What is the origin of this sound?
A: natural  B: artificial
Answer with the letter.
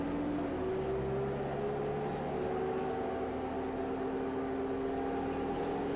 A